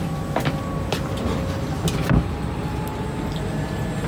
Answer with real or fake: real